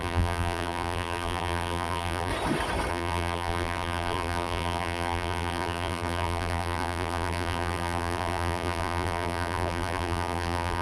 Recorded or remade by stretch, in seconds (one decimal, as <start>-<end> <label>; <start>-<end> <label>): 0.0-2.3 remade; 2.3-2.9 recorded; 2.9-10.8 remade

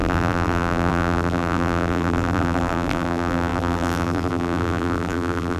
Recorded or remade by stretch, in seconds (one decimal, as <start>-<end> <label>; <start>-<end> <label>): 0.0-5.6 remade

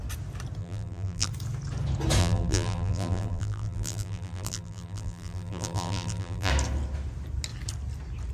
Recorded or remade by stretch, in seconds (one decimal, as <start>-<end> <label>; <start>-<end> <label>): 0.0-0.6 recorded; 0.6-1.3 remade; 1.3-2.2 recorded; 2.2-6.5 remade; 6.5-8.3 recorded